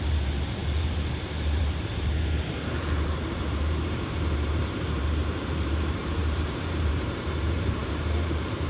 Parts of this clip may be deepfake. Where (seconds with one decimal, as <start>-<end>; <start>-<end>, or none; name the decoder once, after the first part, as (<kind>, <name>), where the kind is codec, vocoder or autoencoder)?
0.0-8.7 (vocoder, BigVGAN v2)